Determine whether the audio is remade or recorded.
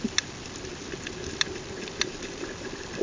remade